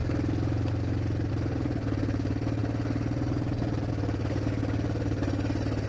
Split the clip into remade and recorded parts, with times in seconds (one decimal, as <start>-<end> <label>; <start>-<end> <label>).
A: 0.0-5.9 recorded